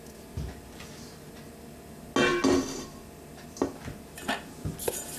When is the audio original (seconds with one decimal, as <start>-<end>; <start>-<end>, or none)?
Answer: 0.0-5.2